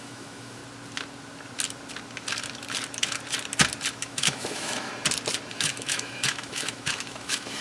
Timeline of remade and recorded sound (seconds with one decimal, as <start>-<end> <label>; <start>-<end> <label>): 0.0-0.6 remade; 0.6-3.9 recorded; 3.9-4.9 remade; 4.9-5.5 recorded; 5.5-7.6 remade